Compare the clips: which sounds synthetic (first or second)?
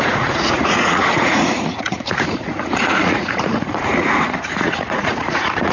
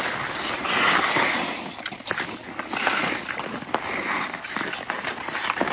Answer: first